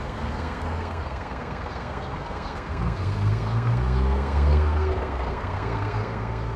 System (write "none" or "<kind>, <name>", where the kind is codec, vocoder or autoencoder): codec, SNAC